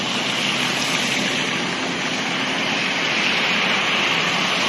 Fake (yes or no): no